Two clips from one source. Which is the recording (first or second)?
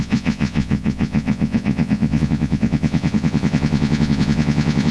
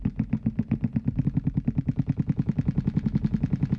second